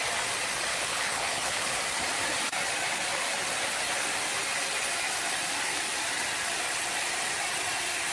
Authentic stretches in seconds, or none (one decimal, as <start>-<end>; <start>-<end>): 0.0-0.7; 1.8-8.1